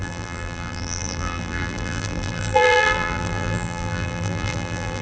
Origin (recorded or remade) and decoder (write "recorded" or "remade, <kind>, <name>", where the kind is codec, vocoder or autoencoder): remade, vocoder, BigVGAN v2